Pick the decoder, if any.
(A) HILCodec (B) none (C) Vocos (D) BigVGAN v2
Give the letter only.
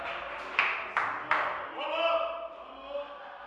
B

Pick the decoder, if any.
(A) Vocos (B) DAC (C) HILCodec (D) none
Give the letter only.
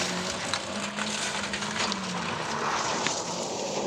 D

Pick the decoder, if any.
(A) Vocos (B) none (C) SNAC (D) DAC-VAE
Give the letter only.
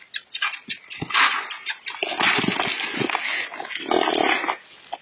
B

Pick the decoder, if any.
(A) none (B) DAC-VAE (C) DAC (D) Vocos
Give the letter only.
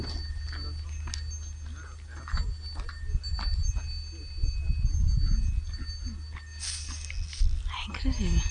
A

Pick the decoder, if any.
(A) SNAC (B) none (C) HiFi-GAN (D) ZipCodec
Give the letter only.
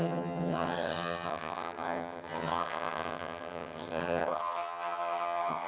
C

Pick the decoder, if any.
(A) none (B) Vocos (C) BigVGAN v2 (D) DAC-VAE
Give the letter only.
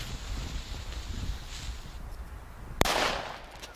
A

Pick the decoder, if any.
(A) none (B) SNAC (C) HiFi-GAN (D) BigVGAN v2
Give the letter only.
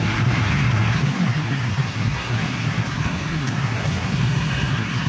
B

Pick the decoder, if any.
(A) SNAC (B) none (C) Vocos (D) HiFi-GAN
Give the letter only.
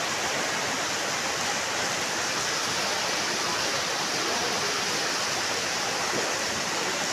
B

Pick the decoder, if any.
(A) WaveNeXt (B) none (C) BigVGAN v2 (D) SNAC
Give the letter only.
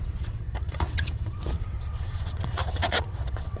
A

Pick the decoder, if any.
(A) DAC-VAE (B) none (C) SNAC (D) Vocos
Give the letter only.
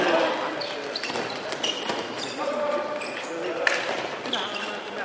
B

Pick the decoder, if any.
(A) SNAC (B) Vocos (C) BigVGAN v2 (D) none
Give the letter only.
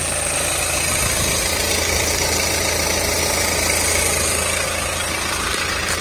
D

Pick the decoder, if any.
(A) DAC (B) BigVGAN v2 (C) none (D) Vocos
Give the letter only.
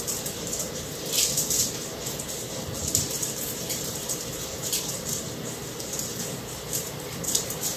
B